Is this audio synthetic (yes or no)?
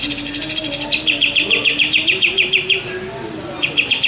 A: no